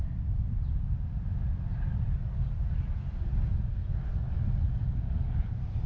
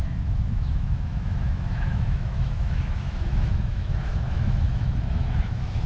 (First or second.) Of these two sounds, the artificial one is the second